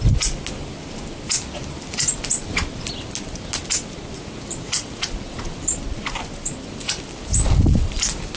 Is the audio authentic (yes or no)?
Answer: yes